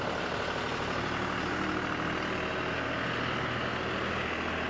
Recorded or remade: recorded